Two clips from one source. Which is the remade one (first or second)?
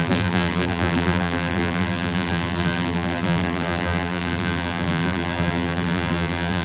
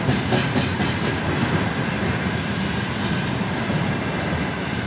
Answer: first